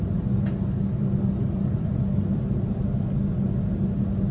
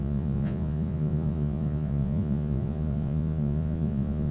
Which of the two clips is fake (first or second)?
second